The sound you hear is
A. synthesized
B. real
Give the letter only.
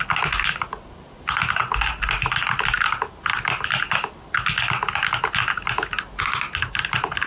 B